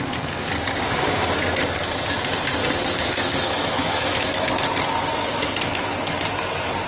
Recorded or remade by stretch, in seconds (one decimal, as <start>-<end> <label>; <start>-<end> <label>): 0.0-2.6 recorded; 2.6-4.5 remade; 4.5-6.9 recorded